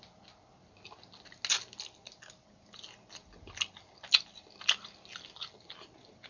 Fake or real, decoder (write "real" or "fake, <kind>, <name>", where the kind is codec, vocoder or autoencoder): real